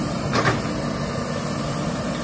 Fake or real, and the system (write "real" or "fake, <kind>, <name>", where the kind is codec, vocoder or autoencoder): fake, vocoder, BigVGAN v2